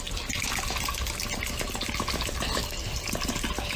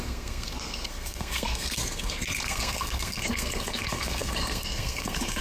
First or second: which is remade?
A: second